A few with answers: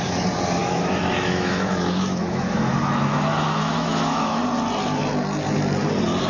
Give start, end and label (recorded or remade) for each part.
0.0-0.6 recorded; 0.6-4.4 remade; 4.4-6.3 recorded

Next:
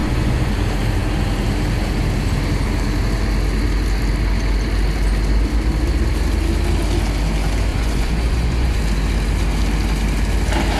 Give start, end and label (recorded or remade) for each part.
0.0-0.5 remade; 0.5-7.7 recorded; 7.7-8.8 remade; 8.8-10.8 recorded

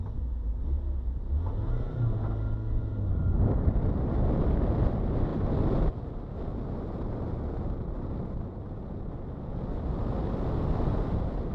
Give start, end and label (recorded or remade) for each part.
0.0-11.5 recorded

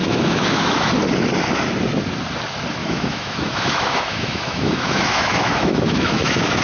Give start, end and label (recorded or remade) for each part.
0.0-0.9 remade; 0.9-2.8 recorded; 2.8-6.6 remade

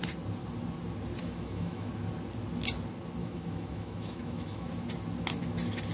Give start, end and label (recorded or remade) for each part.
0.0-1.2 recorded; 1.2-1.9 remade; 1.9-3.2 recorded; 3.2-4.7 remade; 4.7-5.9 recorded

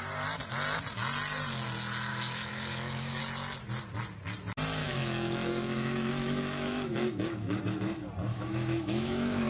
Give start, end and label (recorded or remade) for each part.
0.0-2.1 recorded; 2.1-3.2 remade; 3.2-4.8 recorded; 4.8-7.6 remade; 7.6-8.3 recorded; 8.3-9.5 remade

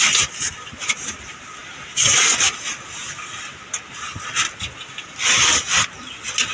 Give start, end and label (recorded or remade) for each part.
0.0-6.5 recorded